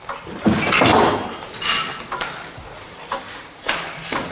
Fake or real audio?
real